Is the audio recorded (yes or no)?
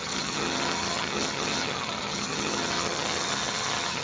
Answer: no